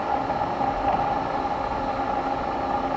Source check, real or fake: real